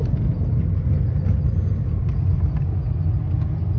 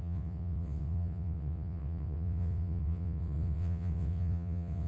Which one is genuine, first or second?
first